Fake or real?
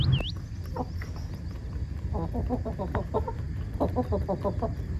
real